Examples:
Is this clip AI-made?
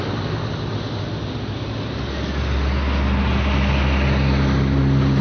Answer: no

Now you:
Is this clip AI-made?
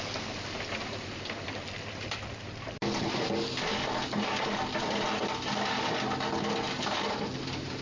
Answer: no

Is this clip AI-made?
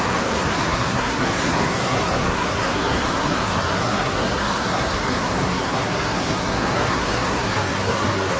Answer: yes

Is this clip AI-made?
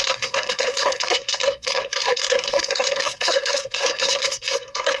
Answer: yes